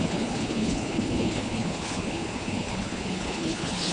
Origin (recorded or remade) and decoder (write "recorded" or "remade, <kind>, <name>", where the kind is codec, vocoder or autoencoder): remade, codec, HILCodec